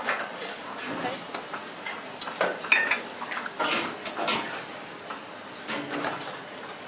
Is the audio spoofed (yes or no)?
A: no